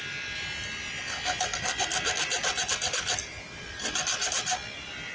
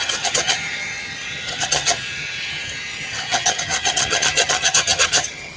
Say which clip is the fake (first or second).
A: second